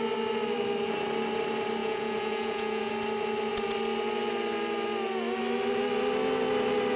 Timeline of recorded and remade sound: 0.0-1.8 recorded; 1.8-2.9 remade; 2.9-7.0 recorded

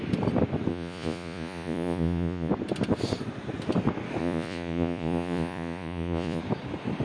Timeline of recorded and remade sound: 0.0-0.7 recorded; 0.7-2.5 remade; 2.5-4.2 recorded; 4.2-6.4 remade; 6.4-7.0 recorded

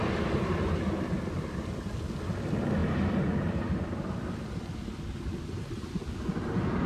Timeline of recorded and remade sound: 0.0-6.9 recorded

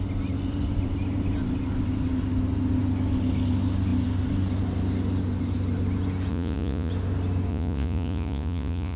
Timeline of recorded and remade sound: 0.0-6.3 recorded; 6.3-6.9 remade; 6.9-7.5 recorded; 7.5-9.0 remade

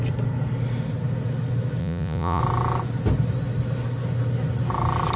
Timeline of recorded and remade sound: 0.0-1.8 recorded; 1.8-2.4 remade; 2.4-5.2 recorded

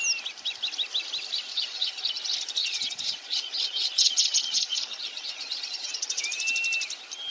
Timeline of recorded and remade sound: 0.0-1.5 recorded; 1.5-2.0 remade; 2.0-2.6 recorded; 2.6-6.2 remade; 6.2-7.3 recorded